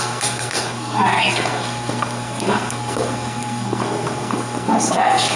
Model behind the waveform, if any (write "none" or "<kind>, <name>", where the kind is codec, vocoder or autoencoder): codec, SNAC